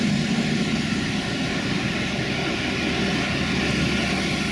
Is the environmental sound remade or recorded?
recorded